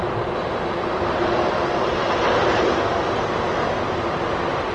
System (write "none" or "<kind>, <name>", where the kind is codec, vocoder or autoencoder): none